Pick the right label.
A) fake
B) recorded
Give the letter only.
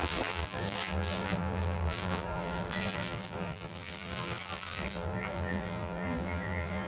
A